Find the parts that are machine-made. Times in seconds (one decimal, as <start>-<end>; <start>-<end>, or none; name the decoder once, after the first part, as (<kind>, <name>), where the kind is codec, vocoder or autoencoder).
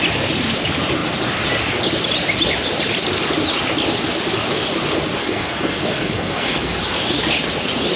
5.2-6.8 (codec, SNAC)